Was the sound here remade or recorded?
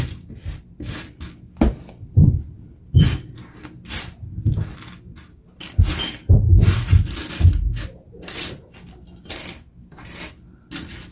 recorded